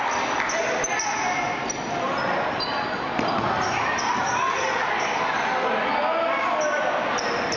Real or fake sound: real